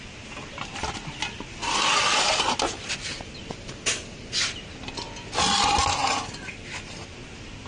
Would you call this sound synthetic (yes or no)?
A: no